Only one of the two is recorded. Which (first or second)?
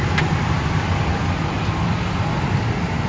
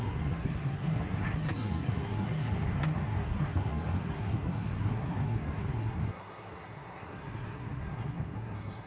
first